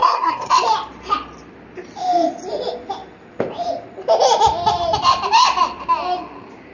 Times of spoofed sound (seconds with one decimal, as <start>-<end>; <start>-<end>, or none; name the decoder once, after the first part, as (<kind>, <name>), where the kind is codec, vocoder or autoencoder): 0.0-0.5 (codec, SNAC)